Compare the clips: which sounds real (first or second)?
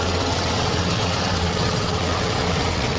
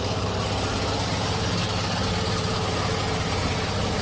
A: second